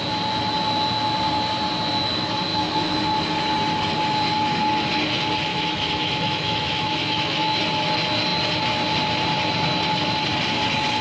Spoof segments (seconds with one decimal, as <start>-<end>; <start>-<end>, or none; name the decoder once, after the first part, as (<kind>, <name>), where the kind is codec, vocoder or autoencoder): 2.5-3.0 (autoencoder, DAC-VAE); 5.5-7.6